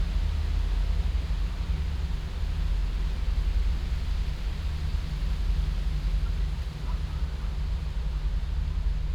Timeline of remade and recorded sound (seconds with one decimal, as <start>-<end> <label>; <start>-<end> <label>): 0.0-9.1 recorded